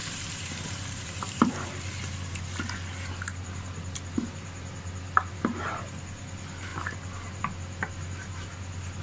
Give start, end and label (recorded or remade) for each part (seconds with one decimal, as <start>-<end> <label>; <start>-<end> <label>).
0.0-1.5 remade; 1.5-9.0 recorded